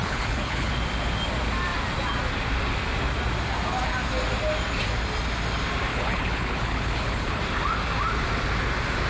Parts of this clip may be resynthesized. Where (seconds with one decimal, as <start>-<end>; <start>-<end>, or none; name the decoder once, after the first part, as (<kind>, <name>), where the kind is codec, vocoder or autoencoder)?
0.0-0.7 (codec, HILCodec); 5.9-7.4